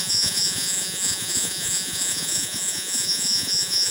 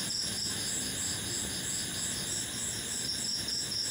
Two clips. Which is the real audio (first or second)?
second